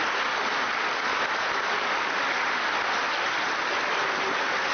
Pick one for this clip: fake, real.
real